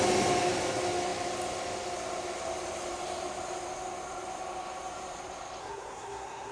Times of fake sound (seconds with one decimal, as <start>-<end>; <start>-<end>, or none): 5.6-6.5